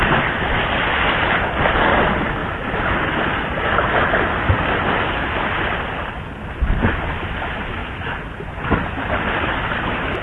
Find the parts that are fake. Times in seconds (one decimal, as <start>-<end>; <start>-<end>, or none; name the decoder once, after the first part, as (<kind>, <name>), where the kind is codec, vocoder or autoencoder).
none